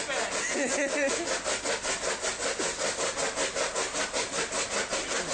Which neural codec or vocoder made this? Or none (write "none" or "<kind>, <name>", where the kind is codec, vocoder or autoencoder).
none